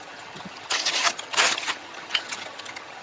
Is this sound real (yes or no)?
no